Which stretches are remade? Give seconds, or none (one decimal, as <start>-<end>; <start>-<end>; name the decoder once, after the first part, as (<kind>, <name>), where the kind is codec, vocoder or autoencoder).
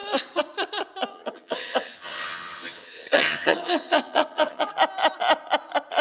1.1-4.7 (vocoder, HiFi-GAN)